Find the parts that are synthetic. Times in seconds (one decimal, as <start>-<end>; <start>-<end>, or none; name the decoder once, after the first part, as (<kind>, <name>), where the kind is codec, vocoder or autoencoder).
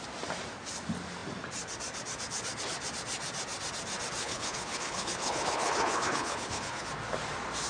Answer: 4.2-6.9 (codec, HILCodec)